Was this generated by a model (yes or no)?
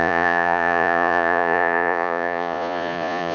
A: yes